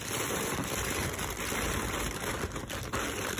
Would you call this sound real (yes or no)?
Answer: yes